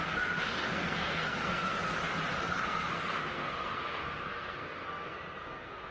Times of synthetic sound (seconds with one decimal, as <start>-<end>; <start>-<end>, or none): 0.0-1.8; 2.4-5.9